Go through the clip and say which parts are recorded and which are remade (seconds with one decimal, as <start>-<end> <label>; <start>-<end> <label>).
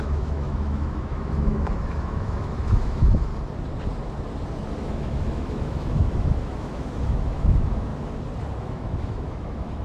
0.0-3.3 remade; 3.3-4.8 recorded; 4.8-7.9 remade; 7.9-8.5 recorded; 8.5-9.8 remade